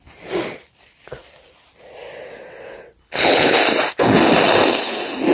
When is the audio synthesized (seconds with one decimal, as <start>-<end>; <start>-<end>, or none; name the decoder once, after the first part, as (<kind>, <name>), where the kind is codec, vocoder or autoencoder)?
3.0-3.6 (codec, HILCodec)